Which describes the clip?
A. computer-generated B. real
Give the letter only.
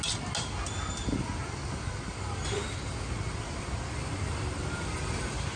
B